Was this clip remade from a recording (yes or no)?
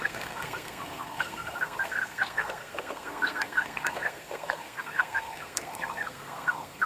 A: yes